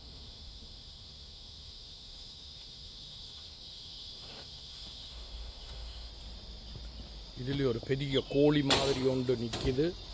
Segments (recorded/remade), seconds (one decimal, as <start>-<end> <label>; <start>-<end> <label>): 0.0-6.1 remade; 6.1-10.1 recorded